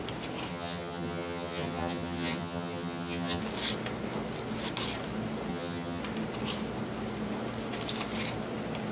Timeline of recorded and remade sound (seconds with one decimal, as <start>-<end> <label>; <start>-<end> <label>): 0.0-0.5 recorded; 0.5-3.4 remade; 3.4-5.5 recorded; 5.5-6.0 remade; 6.0-8.9 recorded